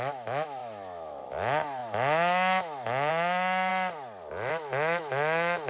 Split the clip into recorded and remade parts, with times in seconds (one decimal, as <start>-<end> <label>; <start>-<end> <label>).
0.0-3.7 remade; 3.7-4.5 recorded; 4.5-5.7 remade